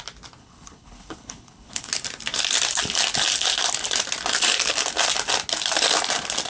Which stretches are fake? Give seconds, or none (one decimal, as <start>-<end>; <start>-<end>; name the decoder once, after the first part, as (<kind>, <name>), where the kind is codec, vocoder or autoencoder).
0.4-1.9 (codec, HILCodec)